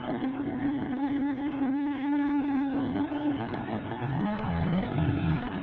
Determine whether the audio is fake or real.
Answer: fake